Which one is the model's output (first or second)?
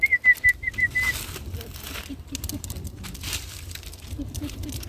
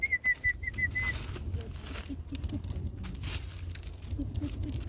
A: first